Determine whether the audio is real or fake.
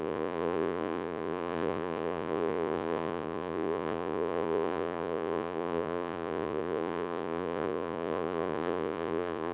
fake